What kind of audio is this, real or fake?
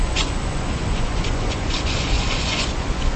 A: fake